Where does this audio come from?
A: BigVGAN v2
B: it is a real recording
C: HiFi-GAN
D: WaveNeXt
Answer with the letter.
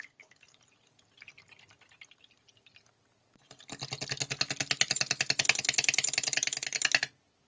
B